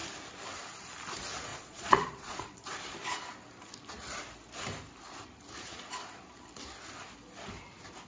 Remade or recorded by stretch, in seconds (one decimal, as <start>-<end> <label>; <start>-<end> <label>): 0.0-1.5 recorded; 1.5-2.7 remade; 2.7-8.1 recorded